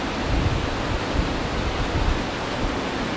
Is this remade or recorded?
remade